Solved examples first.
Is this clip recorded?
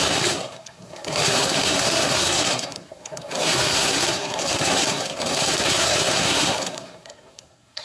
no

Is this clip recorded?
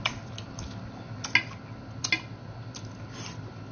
yes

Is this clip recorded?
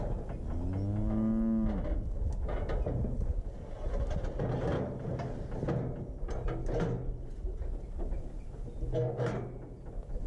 yes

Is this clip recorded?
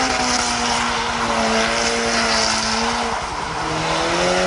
yes